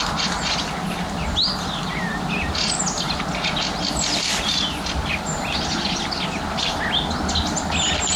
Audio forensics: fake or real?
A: real